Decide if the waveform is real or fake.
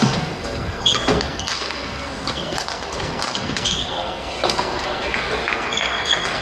fake